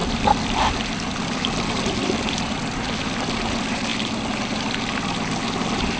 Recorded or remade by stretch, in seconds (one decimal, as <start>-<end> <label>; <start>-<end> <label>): 0.0-2.3 remade; 2.3-6.0 recorded